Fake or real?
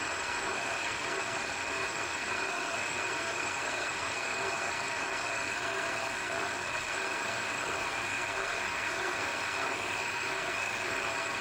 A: fake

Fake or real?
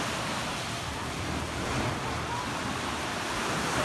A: fake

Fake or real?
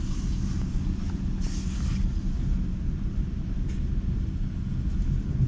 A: real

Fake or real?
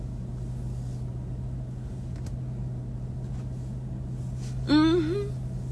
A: real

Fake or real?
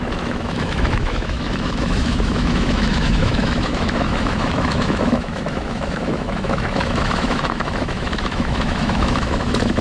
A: fake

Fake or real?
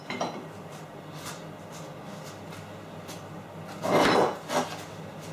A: real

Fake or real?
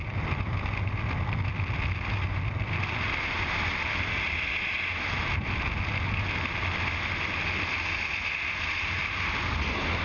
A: real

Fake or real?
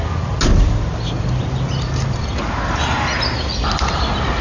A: real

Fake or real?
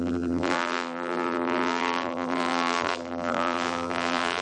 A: fake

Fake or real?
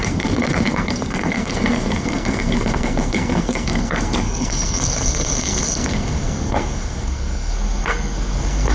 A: fake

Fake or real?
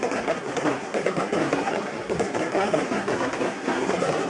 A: fake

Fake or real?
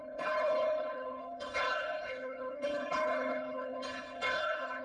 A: fake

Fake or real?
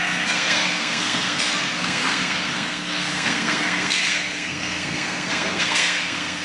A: fake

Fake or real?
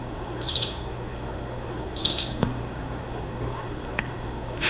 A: fake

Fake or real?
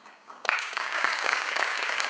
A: fake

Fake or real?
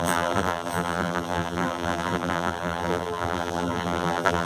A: fake